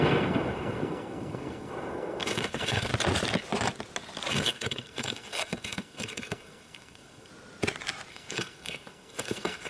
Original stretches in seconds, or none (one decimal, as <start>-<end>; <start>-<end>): 2.9-4.3; 7.3-8.1

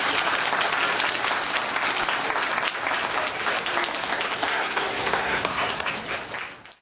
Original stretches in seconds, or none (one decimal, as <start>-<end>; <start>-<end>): 0.0-4.5; 5.9-6.8

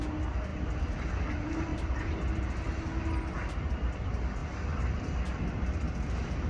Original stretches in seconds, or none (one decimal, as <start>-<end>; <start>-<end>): 0.0-6.5

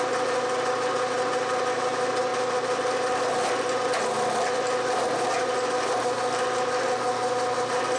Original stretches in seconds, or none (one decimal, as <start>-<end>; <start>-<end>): 0.0-8.0

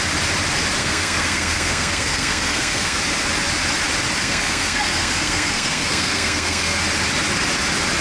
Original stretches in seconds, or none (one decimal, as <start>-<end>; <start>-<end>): 0.0-0.8; 3.0-4.2; 6.8-8.0